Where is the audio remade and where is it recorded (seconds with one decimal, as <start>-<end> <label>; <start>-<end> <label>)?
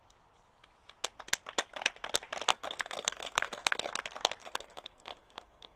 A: 0.0-2.5 recorded; 2.5-3.9 remade; 3.9-4.4 recorded; 4.4-5.8 remade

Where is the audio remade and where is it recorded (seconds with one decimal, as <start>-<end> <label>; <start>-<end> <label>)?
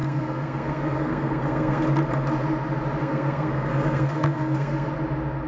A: 0.0-1.8 remade; 1.8-3.0 recorded; 3.0-4.9 remade; 4.9-5.5 recorded